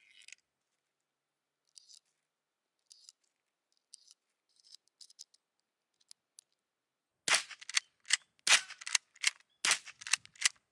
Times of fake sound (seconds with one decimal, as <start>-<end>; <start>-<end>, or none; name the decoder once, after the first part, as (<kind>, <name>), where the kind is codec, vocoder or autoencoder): none